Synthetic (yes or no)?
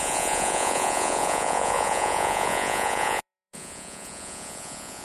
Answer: yes